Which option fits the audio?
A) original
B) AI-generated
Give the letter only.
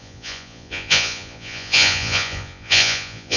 B